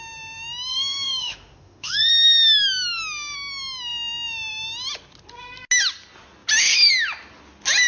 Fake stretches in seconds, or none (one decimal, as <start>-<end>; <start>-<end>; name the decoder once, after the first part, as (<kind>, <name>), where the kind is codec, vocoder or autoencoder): 0.7-2.1 (autoencoder, DAC-VAE)